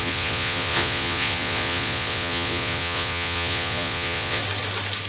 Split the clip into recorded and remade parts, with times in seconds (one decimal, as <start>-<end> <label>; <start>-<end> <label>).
0.0-4.4 remade; 4.4-5.1 recorded